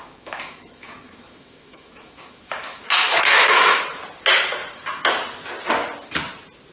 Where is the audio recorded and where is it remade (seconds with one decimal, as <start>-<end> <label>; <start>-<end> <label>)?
0.0-3.8 remade; 3.8-6.7 recorded